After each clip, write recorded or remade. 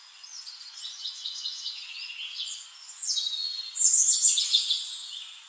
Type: remade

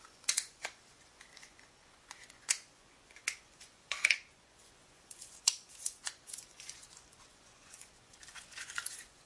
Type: remade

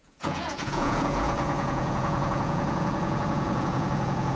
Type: remade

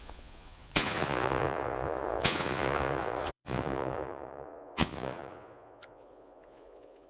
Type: remade